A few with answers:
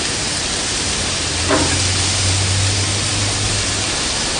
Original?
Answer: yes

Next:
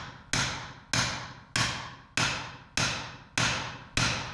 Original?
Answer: yes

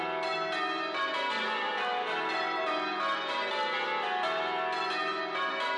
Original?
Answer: yes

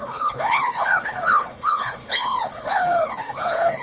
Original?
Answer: no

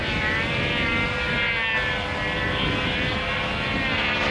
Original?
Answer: yes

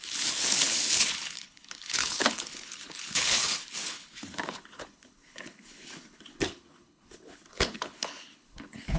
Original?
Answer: no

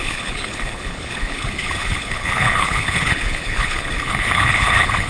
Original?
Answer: no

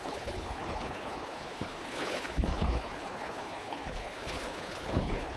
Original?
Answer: no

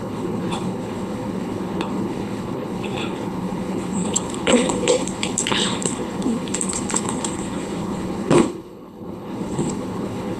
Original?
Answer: no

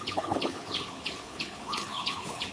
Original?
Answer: no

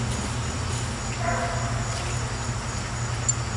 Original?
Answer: yes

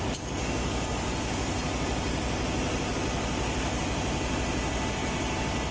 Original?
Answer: yes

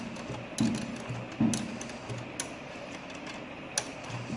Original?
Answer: yes